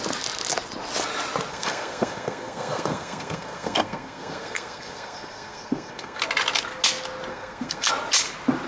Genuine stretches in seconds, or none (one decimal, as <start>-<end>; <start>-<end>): 0.0-1.5; 6.2-7.3; 7.9-8.7